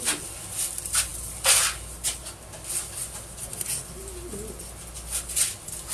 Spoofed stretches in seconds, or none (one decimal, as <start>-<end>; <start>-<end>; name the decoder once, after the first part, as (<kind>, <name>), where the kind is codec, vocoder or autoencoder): none